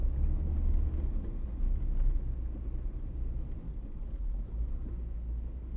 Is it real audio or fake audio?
real